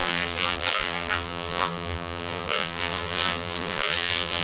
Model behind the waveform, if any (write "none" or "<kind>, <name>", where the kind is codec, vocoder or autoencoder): vocoder, BigVGAN v2